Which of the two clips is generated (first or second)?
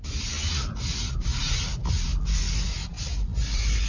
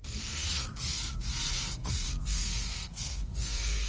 second